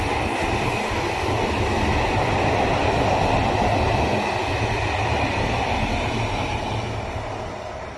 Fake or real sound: real